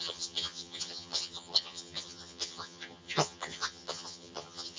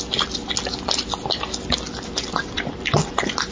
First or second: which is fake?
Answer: first